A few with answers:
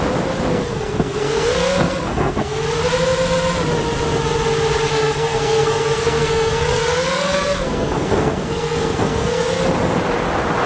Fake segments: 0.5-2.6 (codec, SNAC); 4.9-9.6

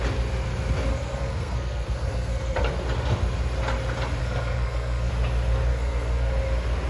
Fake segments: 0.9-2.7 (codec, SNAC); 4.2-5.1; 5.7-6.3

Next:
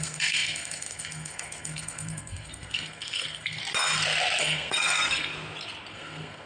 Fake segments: 0.0-3.6 (codec, SNAC); 4.4-5.3; 5.9-6.5